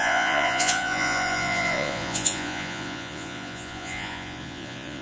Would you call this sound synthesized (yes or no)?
yes